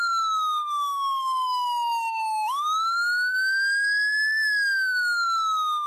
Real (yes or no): no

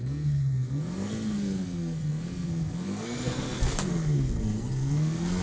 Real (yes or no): no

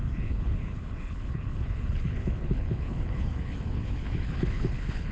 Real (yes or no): no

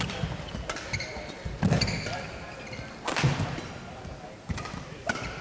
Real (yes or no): yes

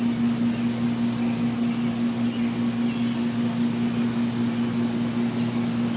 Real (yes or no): yes